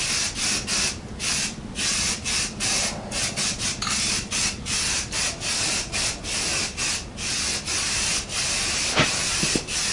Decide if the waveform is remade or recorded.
recorded